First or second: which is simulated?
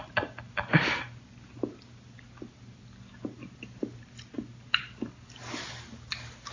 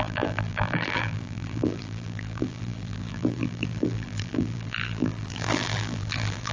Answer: second